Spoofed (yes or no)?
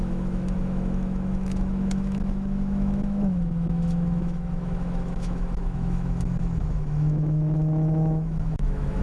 yes